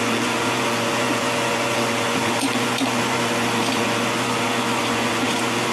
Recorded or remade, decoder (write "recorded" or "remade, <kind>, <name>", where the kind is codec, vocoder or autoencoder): remade, vocoder, Vocos